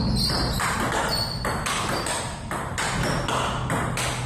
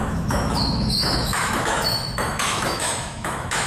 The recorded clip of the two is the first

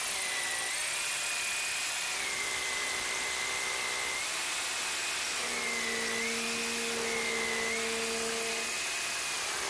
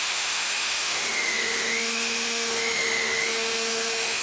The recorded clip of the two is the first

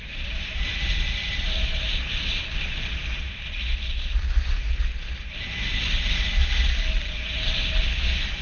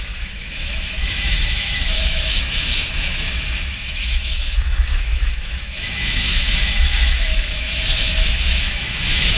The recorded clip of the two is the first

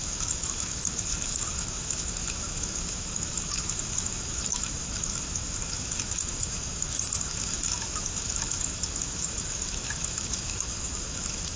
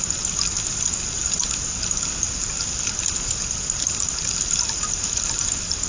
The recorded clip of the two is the second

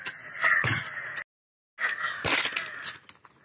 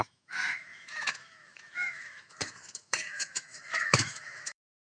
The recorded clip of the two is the first